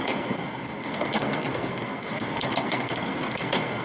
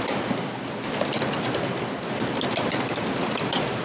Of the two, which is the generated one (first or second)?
first